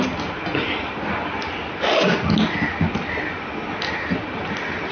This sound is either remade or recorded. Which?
recorded